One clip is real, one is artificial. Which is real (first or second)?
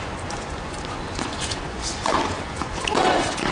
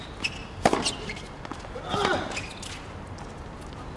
second